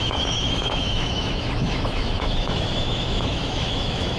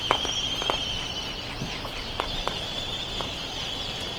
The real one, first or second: second